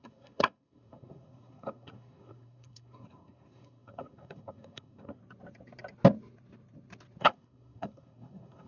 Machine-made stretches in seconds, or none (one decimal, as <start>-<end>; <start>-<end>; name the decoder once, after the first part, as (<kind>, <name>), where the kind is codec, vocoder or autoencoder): 0.0-5.2 (codec, SNAC); 7.2-8.7